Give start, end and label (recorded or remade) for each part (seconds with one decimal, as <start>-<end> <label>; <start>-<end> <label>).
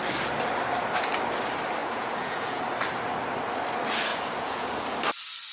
0.0-1.8 recorded; 1.8-2.6 remade; 2.6-4.1 recorded; 4.1-4.7 remade; 4.7-5.5 recorded